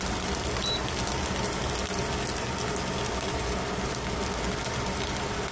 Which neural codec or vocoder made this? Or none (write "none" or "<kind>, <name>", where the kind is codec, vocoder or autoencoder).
none